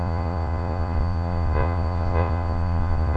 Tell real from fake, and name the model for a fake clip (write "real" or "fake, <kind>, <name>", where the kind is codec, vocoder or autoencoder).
fake, vocoder, Vocos